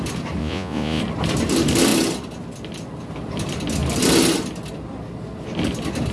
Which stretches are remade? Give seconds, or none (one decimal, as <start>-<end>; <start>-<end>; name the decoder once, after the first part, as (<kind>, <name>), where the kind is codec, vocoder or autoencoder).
0.4-1.0 (vocoder, Vocos)